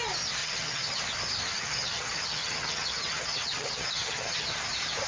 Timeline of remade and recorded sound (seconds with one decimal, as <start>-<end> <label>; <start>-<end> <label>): 0.0-0.4 recorded; 0.4-1.0 remade; 1.0-1.5 recorded; 1.5-4.6 remade; 4.6-5.1 recorded